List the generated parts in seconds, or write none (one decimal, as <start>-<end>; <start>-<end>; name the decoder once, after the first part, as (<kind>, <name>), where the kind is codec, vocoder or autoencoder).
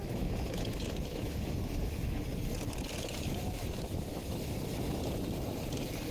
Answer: 0.0-2.3 (autoencoder, DAC-VAE); 3.0-5.0